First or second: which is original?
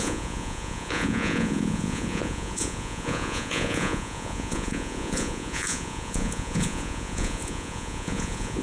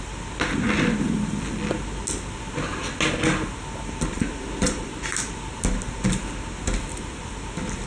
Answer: second